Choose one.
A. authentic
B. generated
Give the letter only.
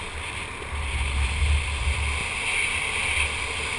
A